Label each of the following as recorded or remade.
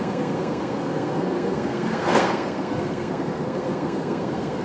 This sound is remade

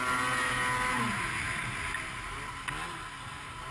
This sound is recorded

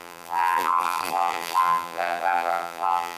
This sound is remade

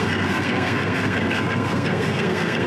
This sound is remade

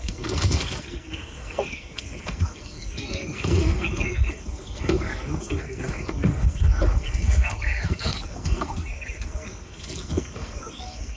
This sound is remade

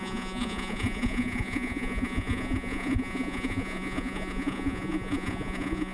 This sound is remade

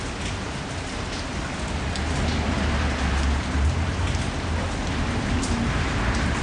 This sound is recorded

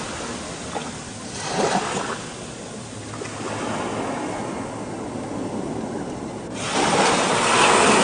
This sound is recorded